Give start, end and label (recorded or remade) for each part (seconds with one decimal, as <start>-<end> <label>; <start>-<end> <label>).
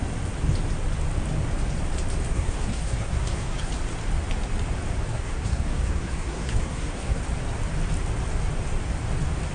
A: 0.0-2.3 recorded; 2.3-3.7 remade; 3.7-5.1 recorded; 5.1-7.2 remade; 7.2-9.5 recorded